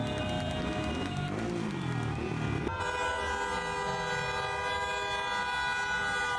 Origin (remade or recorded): recorded